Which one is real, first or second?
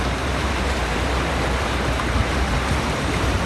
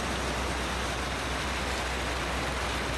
second